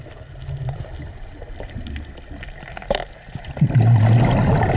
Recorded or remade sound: recorded